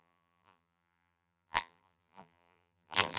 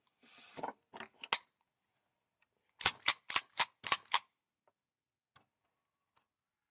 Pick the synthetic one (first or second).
first